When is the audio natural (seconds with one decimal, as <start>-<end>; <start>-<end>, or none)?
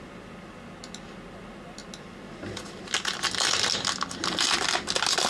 0.0-5.3